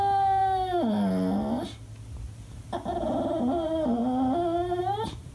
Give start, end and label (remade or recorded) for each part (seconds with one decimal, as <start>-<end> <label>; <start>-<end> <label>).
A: 0.0-0.4 remade; 0.4-2.9 recorded; 2.9-4.0 remade; 4.0-4.8 recorded; 4.8-5.3 remade